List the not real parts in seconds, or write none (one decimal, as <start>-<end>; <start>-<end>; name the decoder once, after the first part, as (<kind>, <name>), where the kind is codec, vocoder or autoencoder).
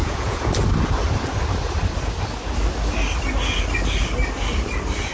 0.0-0.5 (vocoder, Vocos)